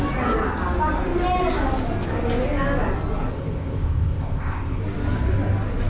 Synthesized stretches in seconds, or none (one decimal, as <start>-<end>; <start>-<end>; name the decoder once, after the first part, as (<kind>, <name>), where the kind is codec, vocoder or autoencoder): 3.3-4.8 (codec, ZipCodec)